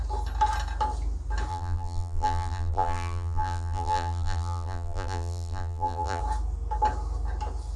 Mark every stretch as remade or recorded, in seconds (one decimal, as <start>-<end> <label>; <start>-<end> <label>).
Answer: 0.0-1.5 recorded; 1.5-6.2 remade; 6.2-7.8 recorded